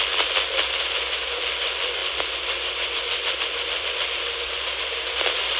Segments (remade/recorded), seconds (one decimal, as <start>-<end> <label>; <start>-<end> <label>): 0.0-2.0 recorded; 2.0-5.6 remade